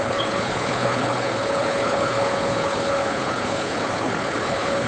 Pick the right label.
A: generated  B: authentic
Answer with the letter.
A